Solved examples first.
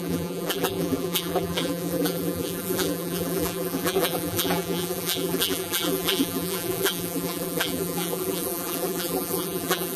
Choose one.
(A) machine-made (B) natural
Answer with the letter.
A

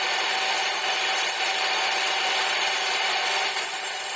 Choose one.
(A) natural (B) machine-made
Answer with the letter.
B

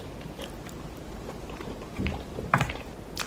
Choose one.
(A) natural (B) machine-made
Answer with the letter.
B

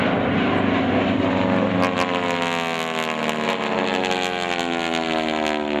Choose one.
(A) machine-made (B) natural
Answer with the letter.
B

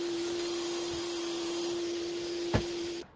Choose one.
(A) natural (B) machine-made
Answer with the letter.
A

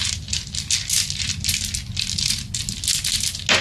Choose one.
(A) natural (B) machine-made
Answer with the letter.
A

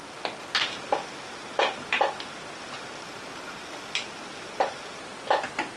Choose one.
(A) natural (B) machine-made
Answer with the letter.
A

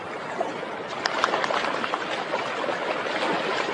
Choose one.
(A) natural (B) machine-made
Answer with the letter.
A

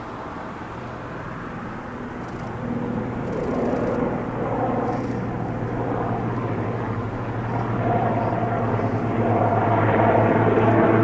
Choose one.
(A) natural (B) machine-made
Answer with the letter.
A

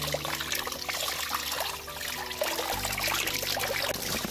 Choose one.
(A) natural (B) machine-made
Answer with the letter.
A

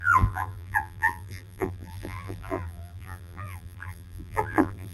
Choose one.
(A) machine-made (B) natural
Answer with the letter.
A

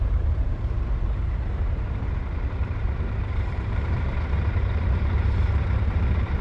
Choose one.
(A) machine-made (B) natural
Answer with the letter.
A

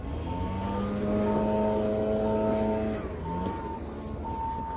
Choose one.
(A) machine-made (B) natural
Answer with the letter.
B